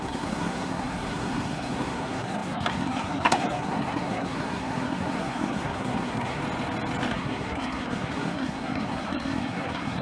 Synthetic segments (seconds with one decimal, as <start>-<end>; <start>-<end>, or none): 0.0-6.4; 7.1-10.0